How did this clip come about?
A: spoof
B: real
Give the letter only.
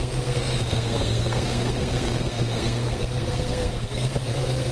A